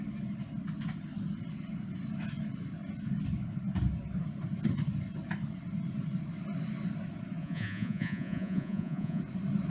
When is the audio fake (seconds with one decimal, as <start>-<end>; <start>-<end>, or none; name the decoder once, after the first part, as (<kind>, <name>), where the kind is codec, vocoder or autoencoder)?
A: 7.4-9.2 (vocoder, Vocos)